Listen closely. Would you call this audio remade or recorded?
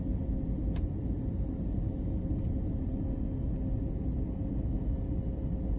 recorded